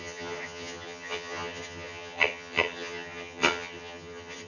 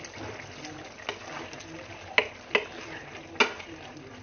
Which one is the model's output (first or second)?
first